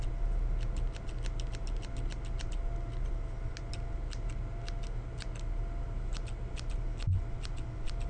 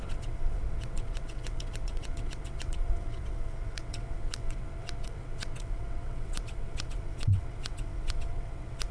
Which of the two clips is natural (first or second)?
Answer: first